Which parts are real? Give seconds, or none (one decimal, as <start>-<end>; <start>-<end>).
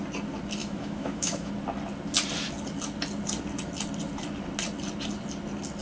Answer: 0.0-0.6; 1.5-5.8